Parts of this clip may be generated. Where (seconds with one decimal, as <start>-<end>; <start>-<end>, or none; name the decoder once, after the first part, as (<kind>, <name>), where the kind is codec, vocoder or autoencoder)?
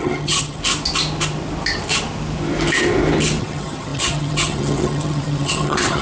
0.0-0.6 (vocoder, HiFi-GAN); 3.4-6.0